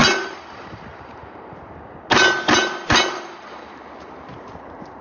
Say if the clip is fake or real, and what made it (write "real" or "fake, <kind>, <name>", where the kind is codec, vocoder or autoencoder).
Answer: real